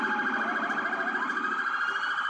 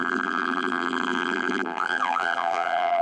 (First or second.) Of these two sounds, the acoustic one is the first